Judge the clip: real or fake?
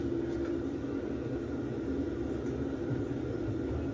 real